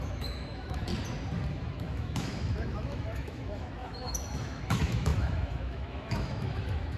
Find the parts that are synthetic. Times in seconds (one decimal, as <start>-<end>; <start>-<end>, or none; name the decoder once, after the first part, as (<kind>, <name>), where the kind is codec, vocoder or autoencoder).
0.0-0.9 (autoencoder, DAC-VAE); 1.5-7.0